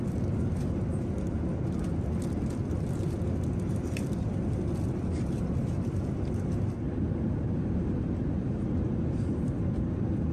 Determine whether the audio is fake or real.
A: real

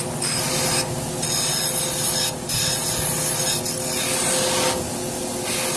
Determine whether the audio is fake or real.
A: real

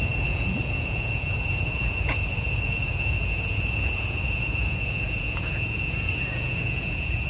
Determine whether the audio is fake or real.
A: fake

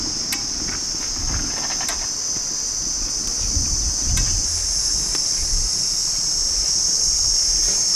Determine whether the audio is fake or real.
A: real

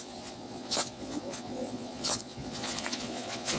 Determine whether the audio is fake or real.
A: fake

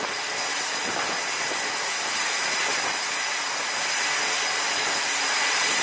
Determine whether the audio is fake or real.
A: real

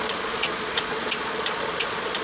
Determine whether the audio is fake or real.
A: fake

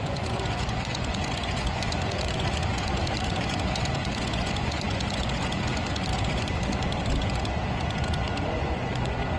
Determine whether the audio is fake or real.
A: fake